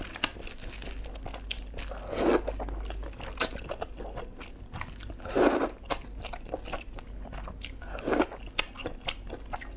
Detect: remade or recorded recorded